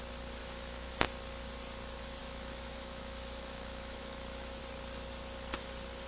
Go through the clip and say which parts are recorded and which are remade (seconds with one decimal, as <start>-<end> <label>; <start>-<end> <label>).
0.0-0.4 recorded; 0.4-0.9 remade; 0.9-2.2 recorded; 2.2-4.6 remade; 4.6-6.1 recorded

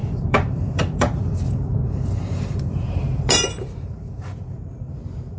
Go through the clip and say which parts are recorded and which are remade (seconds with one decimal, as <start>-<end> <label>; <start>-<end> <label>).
0.0-5.4 remade

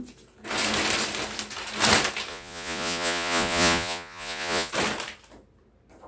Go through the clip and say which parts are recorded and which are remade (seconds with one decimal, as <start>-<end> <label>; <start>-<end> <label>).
0.0-2.3 recorded; 2.3-4.7 remade; 4.7-6.1 recorded

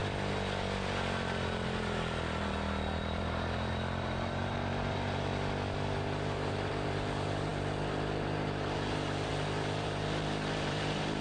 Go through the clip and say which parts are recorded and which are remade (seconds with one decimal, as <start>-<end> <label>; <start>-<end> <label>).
0.0-3.2 recorded; 3.2-5.3 remade; 5.3-6.0 recorded; 6.0-11.2 remade

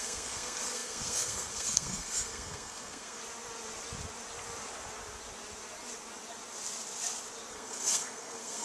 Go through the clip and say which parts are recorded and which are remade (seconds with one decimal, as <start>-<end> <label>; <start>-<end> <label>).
0.0-3.2 remade; 3.2-7.5 recorded; 7.5-8.6 remade